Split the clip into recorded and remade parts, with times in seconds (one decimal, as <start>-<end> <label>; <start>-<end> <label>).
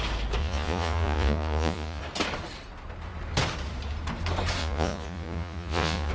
0.0-0.4 recorded; 0.4-2.0 remade; 2.0-4.6 recorded; 4.6-6.1 remade